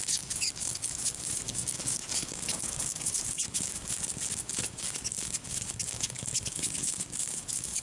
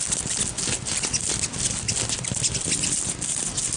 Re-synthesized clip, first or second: first